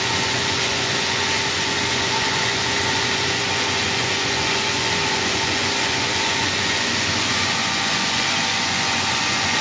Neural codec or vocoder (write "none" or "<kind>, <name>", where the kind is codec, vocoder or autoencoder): vocoder, Vocos